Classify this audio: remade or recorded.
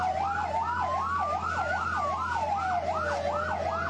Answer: recorded